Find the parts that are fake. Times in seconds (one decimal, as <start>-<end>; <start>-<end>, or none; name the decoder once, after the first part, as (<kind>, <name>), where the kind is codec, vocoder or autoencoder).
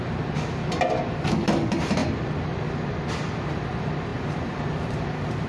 none